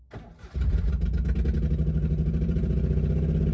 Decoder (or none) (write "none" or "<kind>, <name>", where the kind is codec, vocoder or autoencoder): none